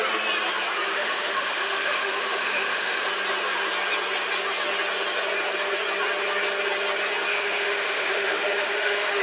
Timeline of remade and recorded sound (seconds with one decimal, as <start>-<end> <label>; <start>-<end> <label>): 0.0-0.9 recorded; 0.9-3.1 remade; 3.1-7.3 recorded; 7.3-9.2 remade